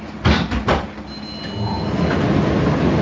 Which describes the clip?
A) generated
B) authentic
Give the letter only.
B